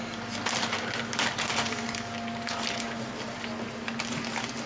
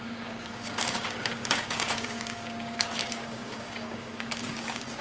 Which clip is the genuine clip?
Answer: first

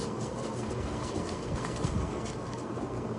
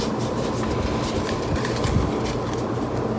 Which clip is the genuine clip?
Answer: second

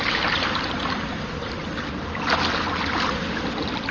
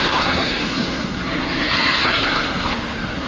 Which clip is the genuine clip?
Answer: first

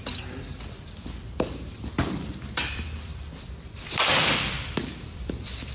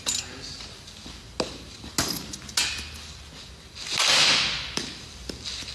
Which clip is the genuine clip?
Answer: second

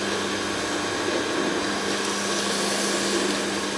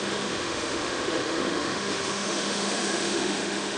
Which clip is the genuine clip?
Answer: first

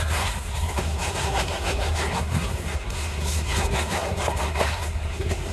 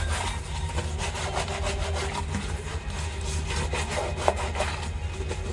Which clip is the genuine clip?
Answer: second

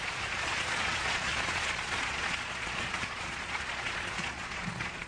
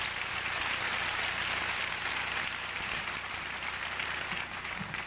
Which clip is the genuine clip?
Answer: second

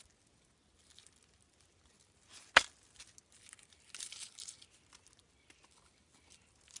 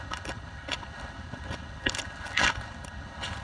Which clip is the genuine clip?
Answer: first